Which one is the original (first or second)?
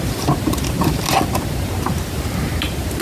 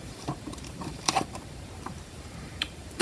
first